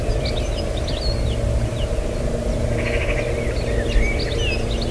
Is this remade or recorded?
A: recorded